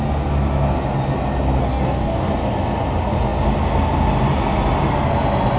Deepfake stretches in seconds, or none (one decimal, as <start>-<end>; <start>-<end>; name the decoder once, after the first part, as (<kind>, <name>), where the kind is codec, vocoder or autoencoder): 1.6-2.3 (codec, DAC)

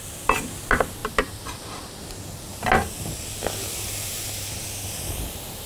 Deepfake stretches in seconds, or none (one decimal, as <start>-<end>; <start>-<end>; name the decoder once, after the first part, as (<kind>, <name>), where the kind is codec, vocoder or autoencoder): none